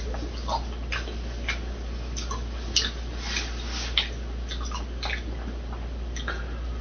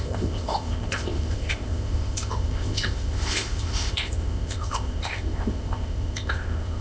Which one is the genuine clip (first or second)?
first